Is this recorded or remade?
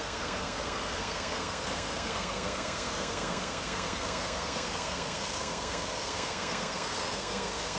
remade